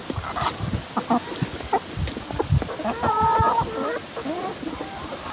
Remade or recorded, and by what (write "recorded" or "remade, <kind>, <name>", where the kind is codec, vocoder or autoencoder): recorded